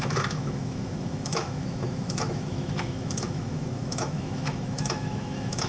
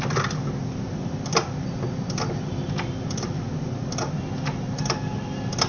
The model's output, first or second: first